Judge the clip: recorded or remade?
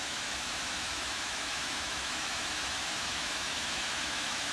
remade